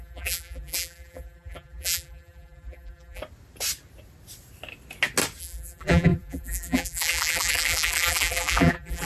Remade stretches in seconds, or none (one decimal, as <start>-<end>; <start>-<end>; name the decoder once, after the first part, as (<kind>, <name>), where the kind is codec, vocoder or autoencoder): 0.0-3.2 (vocoder, BigVGAN v2); 5.4-9.1